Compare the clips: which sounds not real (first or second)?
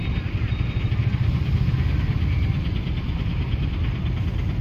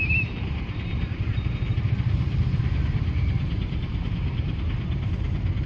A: second